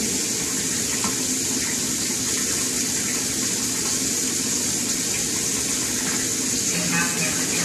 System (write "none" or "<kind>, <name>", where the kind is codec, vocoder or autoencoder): none